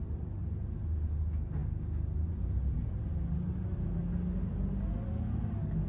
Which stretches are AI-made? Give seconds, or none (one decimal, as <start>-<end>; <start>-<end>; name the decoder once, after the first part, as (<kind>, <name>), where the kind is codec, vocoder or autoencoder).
none